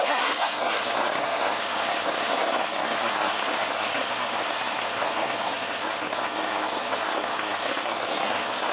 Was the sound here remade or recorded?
remade